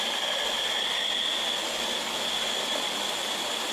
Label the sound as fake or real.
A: real